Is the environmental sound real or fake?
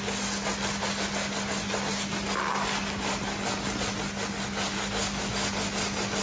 real